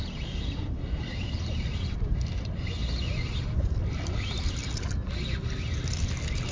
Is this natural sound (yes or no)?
yes